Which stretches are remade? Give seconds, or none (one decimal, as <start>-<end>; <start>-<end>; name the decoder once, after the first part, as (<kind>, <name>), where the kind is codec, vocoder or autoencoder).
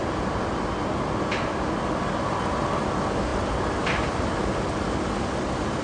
none